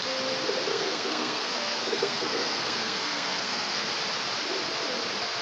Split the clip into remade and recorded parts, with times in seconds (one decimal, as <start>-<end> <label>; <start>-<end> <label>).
0.0-0.7 recorded; 0.7-3.9 remade; 3.9-5.4 recorded